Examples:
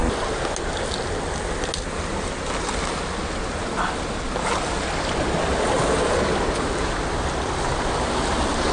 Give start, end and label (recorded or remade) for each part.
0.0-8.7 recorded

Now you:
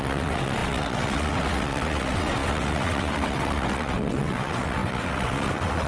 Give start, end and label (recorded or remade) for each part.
0.0-5.9 remade

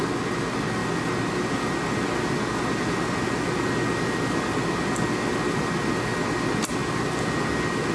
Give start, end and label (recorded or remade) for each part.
0.0-7.9 recorded

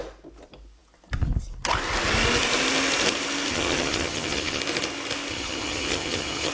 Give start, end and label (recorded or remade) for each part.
0.0-3.5 recorded; 3.5-4.6 remade; 4.6-5.3 recorded; 5.3-6.5 remade

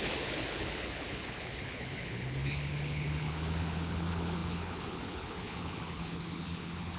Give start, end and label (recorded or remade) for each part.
0.0-7.0 remade

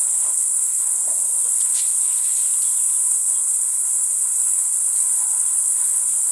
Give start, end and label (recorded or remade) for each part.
0.0-2.4 remade; 2.4-3.1 recorded; 3.1-6.3 remade